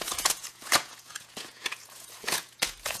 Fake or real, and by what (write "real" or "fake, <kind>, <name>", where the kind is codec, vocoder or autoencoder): fake, vocoder, Vocos